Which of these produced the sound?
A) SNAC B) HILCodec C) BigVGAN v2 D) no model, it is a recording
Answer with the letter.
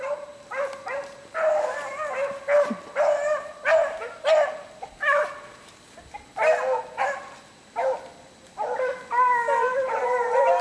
D